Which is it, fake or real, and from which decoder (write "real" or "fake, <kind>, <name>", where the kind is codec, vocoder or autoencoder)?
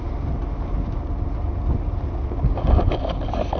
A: real